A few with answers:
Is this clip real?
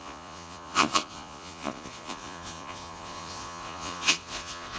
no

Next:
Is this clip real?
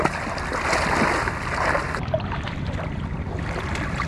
yes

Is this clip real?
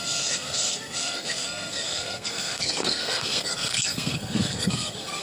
no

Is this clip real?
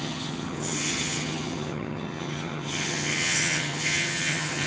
no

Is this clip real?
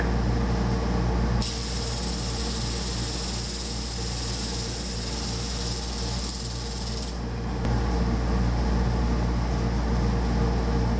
yes